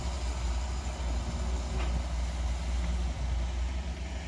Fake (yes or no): no